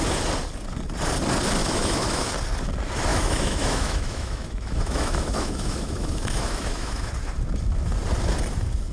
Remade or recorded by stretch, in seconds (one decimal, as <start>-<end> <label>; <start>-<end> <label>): 0.0-1.6 recorded; 1.6-2.3 remade; 2.3-3.1 recorded; 3.1-7.1 remade; 7.1-8.9 recorded

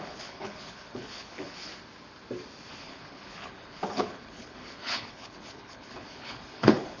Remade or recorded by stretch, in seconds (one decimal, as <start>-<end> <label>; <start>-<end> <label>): 0.0-1.7 remade; 1.7-2.7 recorded; 2.7-7.0 remade

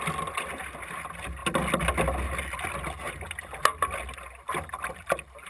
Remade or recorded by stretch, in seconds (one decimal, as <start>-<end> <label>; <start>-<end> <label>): 0.0-5.5 recorded

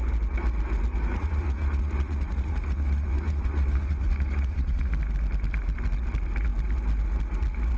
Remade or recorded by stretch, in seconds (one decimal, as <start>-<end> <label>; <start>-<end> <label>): 0.0-1.1 recorded; 1.1-4.9 remade; 4.9-7.8 recorded

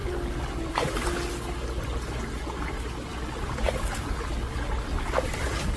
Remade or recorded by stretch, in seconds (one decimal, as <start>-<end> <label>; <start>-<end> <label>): 0.0-0.8 remade; 0.8-5.8 recorded